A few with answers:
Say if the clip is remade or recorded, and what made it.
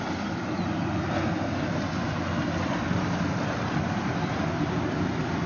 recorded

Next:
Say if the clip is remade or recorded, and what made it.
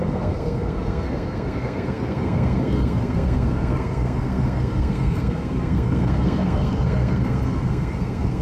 remade, codec, SNAC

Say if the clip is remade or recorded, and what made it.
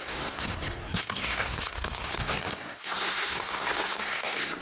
remade, codec, SNAC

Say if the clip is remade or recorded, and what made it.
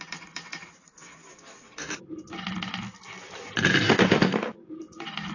recorded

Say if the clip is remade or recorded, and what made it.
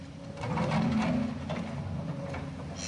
recorded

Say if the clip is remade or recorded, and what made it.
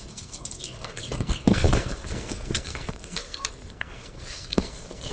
remade, codec, SNAC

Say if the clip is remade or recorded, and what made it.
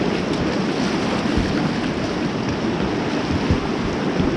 recorded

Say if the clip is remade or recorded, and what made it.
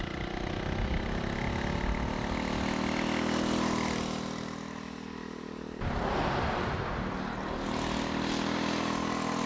recorded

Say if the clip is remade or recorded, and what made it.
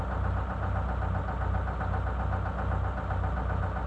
recorded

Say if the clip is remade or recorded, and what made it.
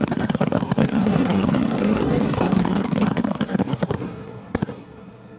remade, codec, SNAC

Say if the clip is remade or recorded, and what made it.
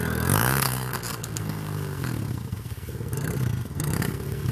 remade, codec, SNAC